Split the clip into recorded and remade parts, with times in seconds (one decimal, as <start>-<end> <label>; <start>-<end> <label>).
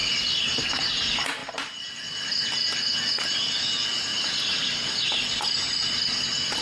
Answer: 0.0-1.4 recorded; 1.4-2.3 remade; 2.3-6.6 recorded